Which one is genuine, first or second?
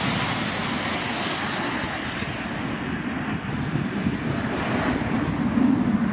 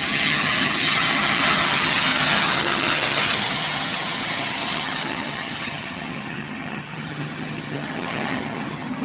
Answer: first